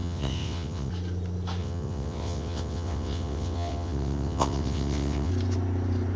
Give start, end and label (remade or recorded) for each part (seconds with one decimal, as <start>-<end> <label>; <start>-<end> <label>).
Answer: 0.0-0.9 remade; 0.9-1.6 recorded; 1.6-5.3 remade; 5.3-6.2 recorded